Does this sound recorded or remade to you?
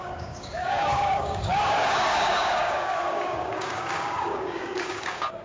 remade